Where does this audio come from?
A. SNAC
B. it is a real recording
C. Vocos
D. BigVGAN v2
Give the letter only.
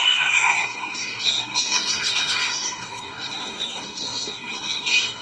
A